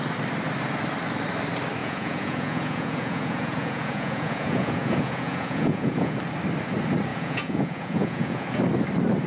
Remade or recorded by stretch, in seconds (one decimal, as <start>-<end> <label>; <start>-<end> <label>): 0.0-1.8 recorded; 1.8-6.2 remade; 6.2-7.1 recorded; 7.1-8.6 remade; 8.6-9.3 recorded